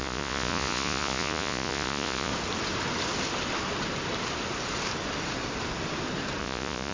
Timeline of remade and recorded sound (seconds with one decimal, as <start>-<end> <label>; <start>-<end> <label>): 0.0-2.3 remade; 2.3-6.4 recorded; 6.4-6.9 remade